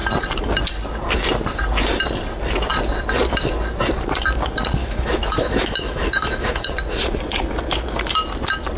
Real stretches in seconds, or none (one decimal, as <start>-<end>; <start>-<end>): 0.0-4.8; 6.7-8.8